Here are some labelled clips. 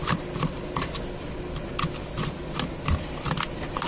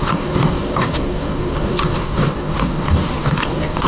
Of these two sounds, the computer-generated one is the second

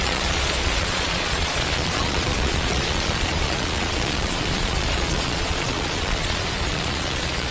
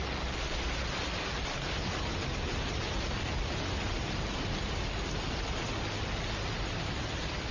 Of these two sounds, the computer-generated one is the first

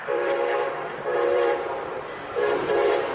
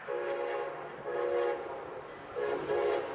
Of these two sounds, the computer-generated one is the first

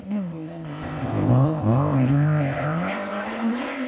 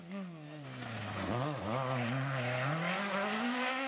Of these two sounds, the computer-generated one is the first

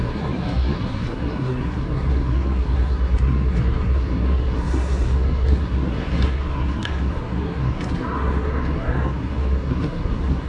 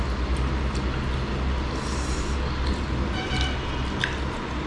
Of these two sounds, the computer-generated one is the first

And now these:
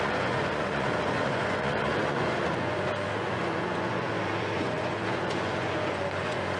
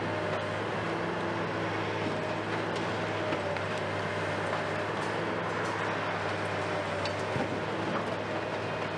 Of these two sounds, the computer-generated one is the first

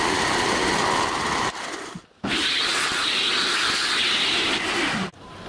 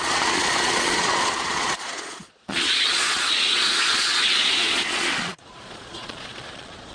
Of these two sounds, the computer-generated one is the second